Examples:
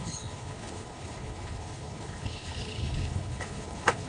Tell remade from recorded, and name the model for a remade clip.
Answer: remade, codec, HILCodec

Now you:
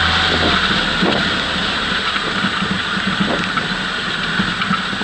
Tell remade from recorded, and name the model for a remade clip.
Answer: recorded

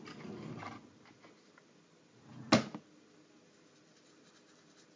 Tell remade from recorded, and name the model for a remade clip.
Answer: recorded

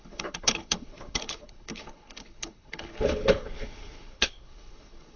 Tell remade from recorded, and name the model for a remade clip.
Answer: remade, codec, HILCodec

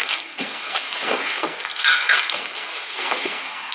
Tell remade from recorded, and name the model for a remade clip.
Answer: remade, codec, SNAC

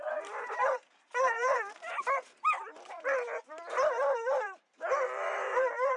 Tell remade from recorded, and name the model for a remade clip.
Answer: remade, vocoder, BigVGAN v2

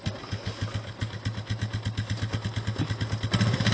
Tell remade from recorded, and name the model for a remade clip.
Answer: recorded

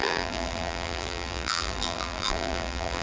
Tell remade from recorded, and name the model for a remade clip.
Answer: remade, vocoder, BigVGAN v2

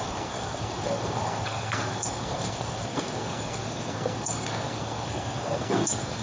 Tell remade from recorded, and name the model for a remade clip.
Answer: remade, codec, SNAC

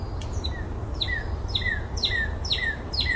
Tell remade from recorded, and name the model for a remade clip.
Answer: recorded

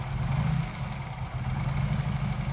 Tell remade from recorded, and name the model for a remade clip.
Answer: recorded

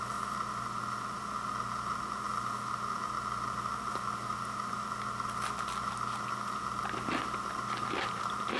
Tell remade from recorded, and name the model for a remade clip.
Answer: recorded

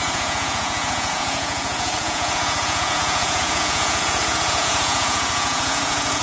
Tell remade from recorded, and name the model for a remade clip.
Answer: remade, vocoder, Vocos